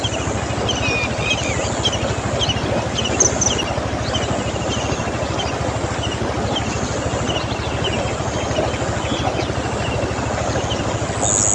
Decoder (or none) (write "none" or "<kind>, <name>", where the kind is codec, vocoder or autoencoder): none